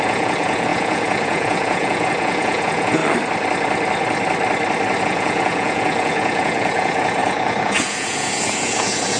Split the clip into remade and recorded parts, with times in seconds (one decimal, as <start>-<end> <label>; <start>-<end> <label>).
0.0-3.0 remade; 3.0-5.0 recorded; 5.0-9.2 remade